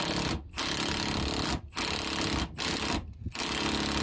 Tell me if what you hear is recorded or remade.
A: recorded